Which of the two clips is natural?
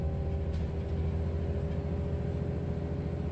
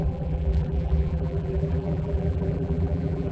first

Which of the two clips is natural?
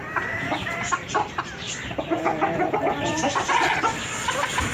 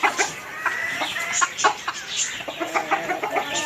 second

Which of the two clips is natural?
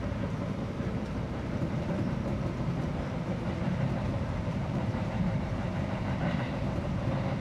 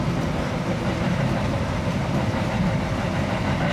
second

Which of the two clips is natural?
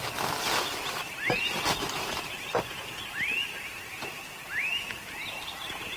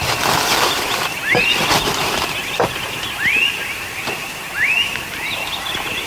first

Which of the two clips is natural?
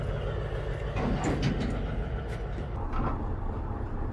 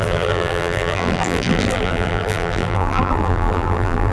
first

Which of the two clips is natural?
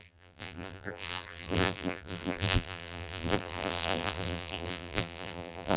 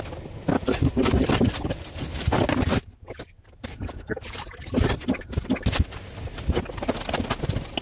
second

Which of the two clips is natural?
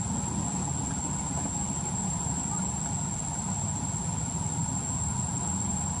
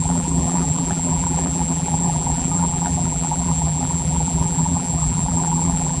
first